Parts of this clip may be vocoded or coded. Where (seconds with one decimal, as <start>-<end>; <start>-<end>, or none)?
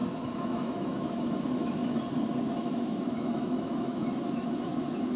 0.0-1.8; 2.4-5.2